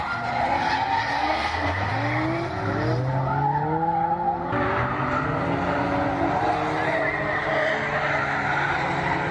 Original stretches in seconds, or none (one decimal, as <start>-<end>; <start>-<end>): 0.0-1.2; 1.9-9.3